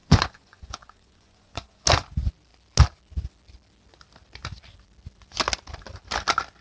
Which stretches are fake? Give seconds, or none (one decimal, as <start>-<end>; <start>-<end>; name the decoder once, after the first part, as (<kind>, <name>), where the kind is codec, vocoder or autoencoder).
0.0-1.8 (vocoder, Vocos)